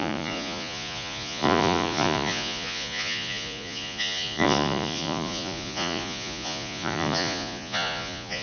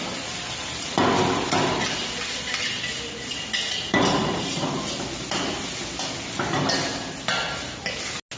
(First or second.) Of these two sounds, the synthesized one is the first